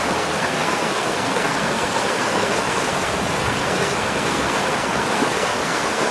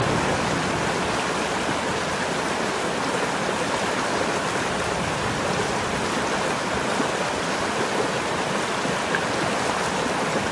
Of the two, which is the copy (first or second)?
first